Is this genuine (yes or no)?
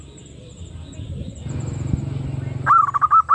yes